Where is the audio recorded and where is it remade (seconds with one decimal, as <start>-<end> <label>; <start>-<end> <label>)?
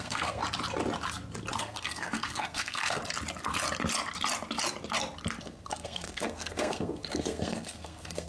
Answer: 0.0-0.4 remade; 0.4-1.6 recorded; 1.6-3.0 remade; 3.0-5.4 recorded; 5.4-8.3 remade